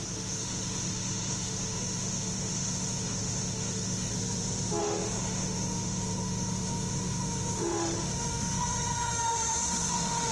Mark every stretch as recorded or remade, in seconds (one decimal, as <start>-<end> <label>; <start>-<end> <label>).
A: 0.0-4.1 remade; 4.1-4.8 recorded; 4.8-10.3 remade